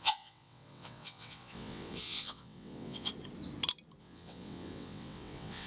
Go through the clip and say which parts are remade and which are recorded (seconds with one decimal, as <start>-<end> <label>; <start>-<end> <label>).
0.0-3.1 remade; 3.1-4.0 recorded; 4.0-5.7 remade